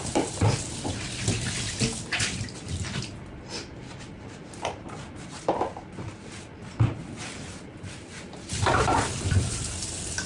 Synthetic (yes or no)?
no